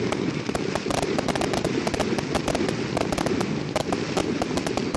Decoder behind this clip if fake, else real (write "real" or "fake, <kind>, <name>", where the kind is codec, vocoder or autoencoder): real